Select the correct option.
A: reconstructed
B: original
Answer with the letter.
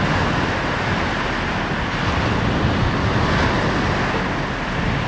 B